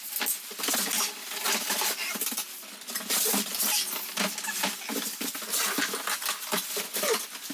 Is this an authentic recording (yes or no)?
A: yes